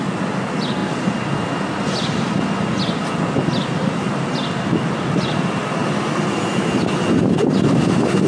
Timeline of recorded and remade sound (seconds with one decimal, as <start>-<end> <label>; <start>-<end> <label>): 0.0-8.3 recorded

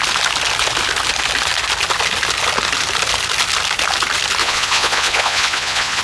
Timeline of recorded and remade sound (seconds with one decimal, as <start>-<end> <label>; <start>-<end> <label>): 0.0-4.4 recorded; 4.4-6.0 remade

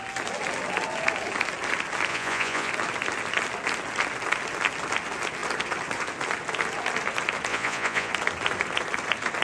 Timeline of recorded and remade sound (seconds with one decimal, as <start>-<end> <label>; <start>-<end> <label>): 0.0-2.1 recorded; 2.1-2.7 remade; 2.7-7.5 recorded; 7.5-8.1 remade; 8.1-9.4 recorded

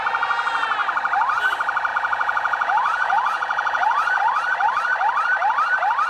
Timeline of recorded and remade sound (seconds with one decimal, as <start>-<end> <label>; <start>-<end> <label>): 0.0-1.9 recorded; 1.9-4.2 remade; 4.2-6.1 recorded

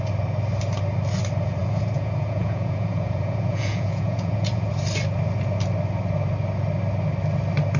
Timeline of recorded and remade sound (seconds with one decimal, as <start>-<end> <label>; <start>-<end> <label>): 0.0-1.6 recorded; 1.6-4.7 remade; 4.7-7.8 recorded

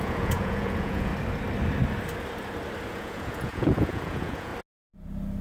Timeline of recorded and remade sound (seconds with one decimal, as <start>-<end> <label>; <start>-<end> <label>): 0.0-1.1 remade; 1.1-2.9 recorded; 2.9-4.5 remade; 4.5-5.4 recorded

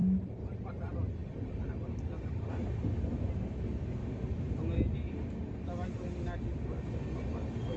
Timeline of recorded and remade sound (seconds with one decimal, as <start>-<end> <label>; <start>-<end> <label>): 0.0-7.8 recorded